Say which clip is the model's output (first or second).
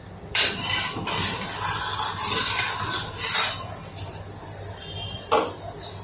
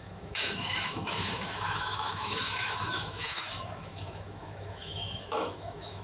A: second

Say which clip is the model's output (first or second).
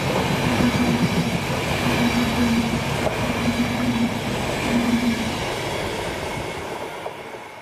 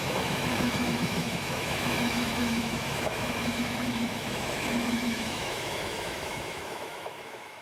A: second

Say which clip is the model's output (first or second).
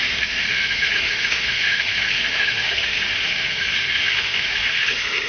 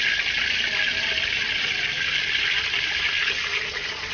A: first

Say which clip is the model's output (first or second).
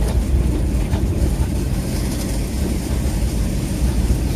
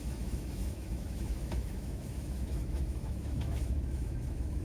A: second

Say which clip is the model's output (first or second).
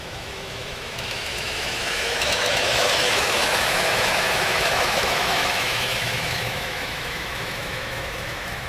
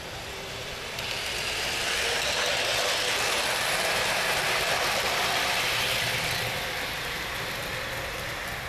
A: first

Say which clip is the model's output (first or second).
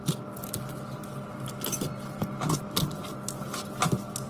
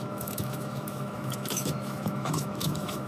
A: second